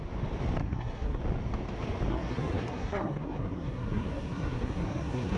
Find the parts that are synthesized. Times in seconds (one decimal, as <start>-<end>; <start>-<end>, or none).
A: 0.6-1.2; 2.1-5.4